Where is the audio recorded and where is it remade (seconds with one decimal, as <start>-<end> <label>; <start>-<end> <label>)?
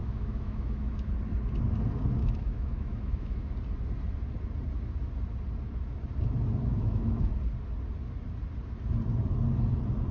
0.0-1.1 remade; 1.1-2.2 recorded; 2.2-3.5 remade; 3.5-6.7 recorded; 6.7-7.3 remade; 7.3-10.1 recorded